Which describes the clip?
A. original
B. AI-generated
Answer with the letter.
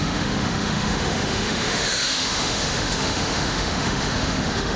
B